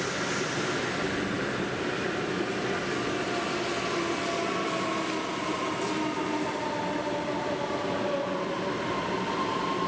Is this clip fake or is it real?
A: real